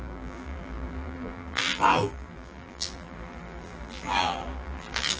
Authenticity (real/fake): fake